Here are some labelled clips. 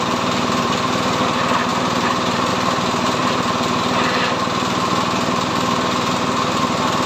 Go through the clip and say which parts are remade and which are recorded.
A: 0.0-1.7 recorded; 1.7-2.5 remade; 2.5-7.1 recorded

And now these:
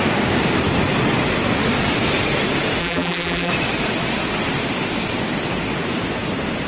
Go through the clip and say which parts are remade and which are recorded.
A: 0.0-2.8 recorded; 2.8-3.5 remade; 3.5-6.7 recorded

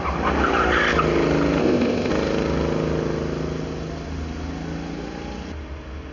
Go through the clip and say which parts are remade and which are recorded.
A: 0.0-1.6 recorded; 1.6-2.1 remade; 2.1-6.1 recorded

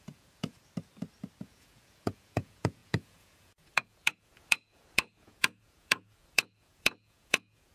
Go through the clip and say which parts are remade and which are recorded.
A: 0.0-0.6 remade; 0.6-1.4 recorded; 1.4-7.7 remade

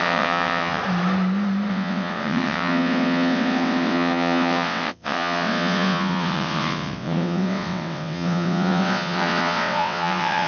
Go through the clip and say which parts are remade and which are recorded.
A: 0.0-0.8 remade; 0.8-1.7 recorded; 1.7-10.5 remade